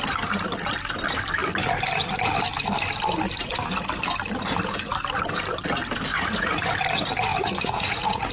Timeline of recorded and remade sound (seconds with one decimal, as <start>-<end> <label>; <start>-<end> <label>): 0.0-6.1 recorded; 6.1-6.7 remade; 6.7-7.3 recorded; 7.3-8.3 remade